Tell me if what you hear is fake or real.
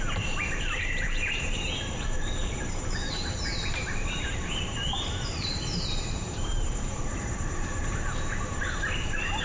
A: fake